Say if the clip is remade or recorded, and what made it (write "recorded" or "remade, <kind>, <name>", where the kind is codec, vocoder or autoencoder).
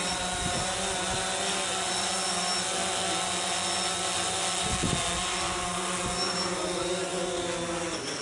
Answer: recorded